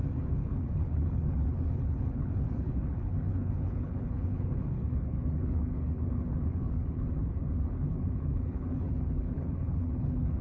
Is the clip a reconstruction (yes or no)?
yes